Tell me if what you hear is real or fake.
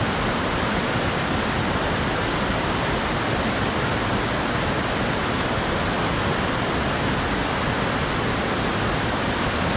fake